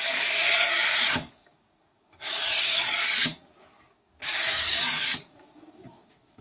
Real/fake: fake